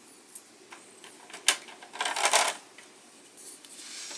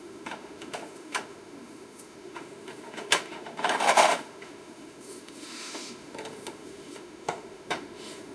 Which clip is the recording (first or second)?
first